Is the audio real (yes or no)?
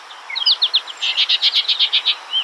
yes